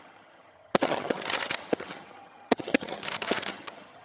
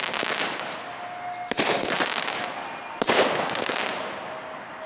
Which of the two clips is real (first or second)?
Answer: second